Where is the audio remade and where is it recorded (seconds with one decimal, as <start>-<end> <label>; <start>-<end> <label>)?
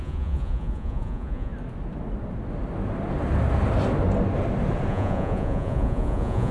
0.0-1.5 remade; 1.5-4.9 recorded; 4.9-6.5 remade